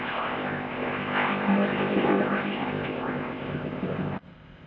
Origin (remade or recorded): remade